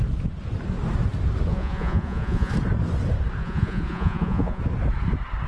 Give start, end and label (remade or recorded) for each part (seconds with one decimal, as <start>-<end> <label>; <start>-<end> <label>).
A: 0.0-1.5 recorded; 1.5-2.5 remade; 2.5-3.4 recorded; 3.4-4.6 remade; 4.6-5.5 recorded